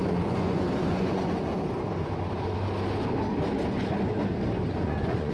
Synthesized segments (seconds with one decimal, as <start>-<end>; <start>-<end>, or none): 0.0-1.5; 4.7-5.3